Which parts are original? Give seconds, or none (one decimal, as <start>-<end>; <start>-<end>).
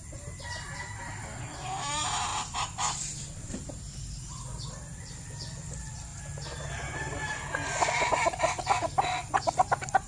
0.0-10.1